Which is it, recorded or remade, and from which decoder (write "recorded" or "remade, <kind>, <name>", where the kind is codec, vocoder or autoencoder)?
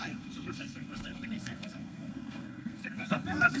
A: remade, codec, SNAC